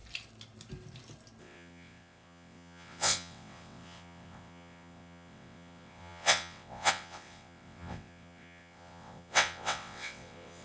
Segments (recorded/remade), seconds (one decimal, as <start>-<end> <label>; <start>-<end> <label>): 0.0-1.4 recorded; 1.4-10.6 remade